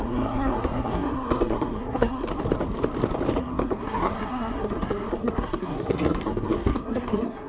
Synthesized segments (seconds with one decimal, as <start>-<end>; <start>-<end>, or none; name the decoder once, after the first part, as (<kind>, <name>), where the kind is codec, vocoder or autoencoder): 0.0-2.3 (codec, SNAC); 3.4-7.5